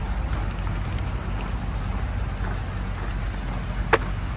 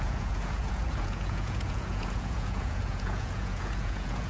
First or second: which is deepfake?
second